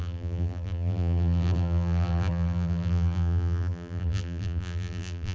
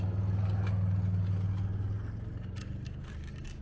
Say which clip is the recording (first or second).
second